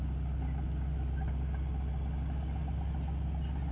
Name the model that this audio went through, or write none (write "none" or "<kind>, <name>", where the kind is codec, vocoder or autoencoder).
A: none